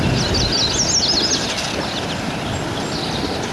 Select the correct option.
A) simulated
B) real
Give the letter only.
B